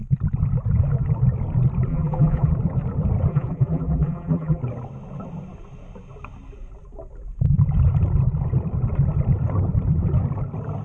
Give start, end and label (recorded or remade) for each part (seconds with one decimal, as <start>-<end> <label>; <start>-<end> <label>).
0.0-1.9 recorded; 1.9-2.5 remade; 2.5-3.3 recorded; 3.3-4.6 remade; 4.6-10.8 recorded